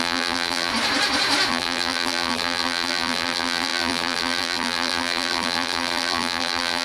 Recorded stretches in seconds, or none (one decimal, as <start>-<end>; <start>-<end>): 0.7-1.5